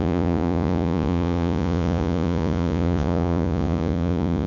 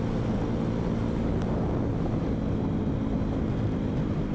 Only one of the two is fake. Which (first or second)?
first